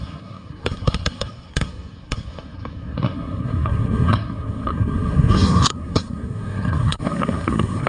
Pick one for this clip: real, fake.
fake